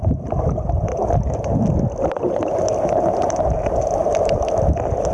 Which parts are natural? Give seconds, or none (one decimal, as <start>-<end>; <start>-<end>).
0.0-5.1